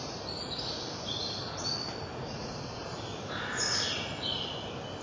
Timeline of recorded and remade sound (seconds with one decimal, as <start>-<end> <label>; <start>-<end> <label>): 0.0-2.1 recorded; 2.1-2.9 remade; 2.9-5.0 recorded